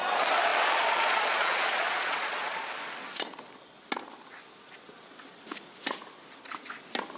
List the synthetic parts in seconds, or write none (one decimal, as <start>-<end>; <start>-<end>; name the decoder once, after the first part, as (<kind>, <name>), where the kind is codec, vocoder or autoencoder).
0.5-2.7 (vocoder, Vocos)